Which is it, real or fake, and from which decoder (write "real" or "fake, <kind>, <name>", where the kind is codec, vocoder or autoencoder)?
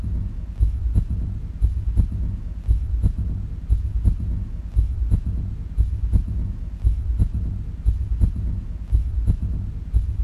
real